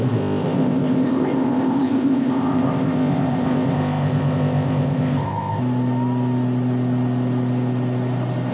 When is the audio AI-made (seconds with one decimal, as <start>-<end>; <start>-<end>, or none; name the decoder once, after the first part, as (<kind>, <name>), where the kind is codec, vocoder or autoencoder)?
0.0-5.6 (codec, ZipCodec)